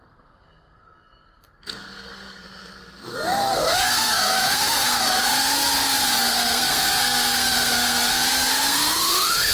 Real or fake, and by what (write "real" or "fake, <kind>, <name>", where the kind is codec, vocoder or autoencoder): fake, codec, SNAC